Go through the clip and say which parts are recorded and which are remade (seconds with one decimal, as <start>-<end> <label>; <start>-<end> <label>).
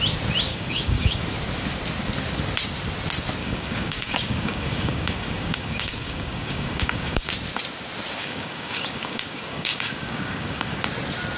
0.0-0.5 recorded; 0.5-1.2 remade; 1.2-3.4 recorded; 3.4-7.3 remade; 7.3-8.2 recorded; 8.2-10.8 remade; 10.8-11.4 recorded